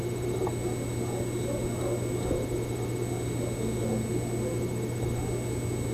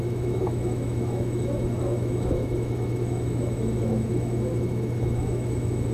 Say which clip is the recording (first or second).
first